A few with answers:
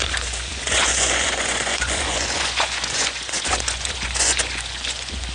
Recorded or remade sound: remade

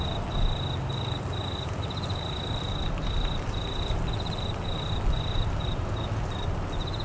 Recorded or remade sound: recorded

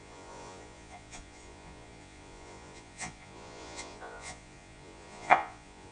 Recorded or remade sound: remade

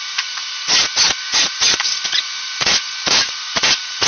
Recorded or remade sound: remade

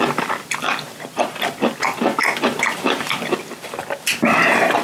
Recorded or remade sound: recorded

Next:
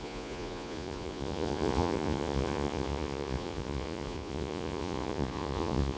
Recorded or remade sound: remade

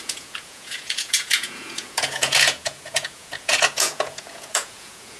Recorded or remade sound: remade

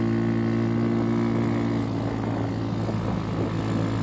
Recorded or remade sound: recorded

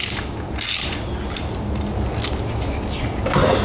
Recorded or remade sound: recorded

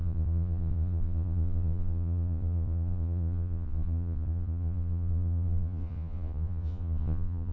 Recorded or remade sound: remade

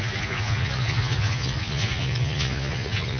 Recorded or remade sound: remade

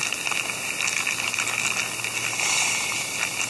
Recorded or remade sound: recorded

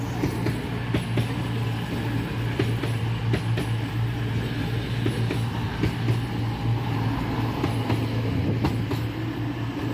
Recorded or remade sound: recorded